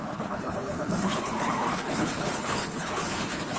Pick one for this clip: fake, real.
fake